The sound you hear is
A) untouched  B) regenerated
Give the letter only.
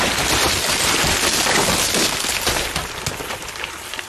A